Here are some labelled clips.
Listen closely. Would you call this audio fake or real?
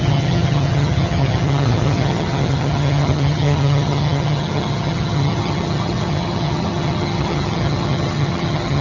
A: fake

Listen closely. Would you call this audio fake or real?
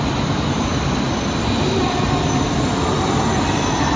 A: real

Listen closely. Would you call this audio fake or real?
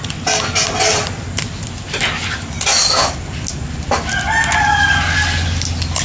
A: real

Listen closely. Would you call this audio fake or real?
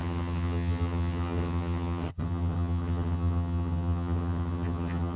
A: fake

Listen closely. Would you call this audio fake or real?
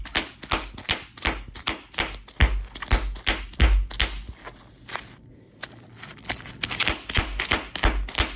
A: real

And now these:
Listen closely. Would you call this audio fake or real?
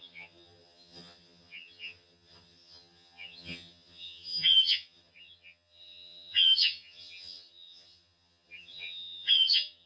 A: fake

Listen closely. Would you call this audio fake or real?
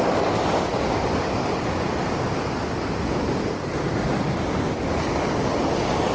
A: real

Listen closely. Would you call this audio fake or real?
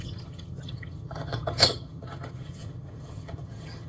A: fake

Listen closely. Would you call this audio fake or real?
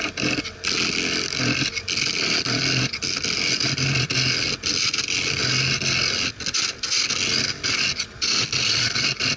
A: real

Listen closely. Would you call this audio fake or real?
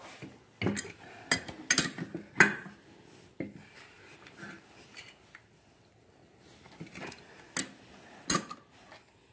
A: real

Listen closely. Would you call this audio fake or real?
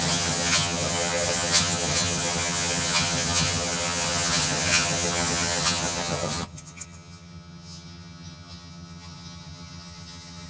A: fake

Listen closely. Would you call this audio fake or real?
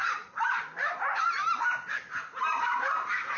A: real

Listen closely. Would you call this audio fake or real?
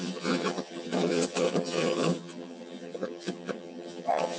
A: fake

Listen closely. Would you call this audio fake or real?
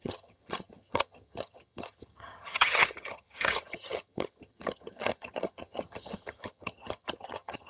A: fake